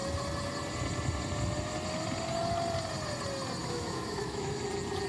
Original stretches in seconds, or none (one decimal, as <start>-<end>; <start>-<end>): 0.0-3.6; 4.6-5.1